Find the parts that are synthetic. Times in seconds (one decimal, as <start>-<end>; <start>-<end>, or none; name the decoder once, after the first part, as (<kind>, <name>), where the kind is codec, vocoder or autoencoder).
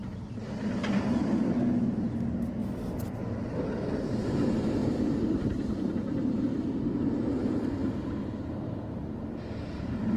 4.8-6.6 (vocoder, BigVGAN v2)